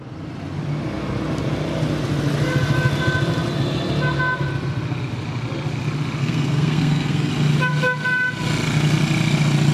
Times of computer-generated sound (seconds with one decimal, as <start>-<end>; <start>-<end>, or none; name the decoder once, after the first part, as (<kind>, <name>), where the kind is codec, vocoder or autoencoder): 6.2-7.3 (codec, SNAC)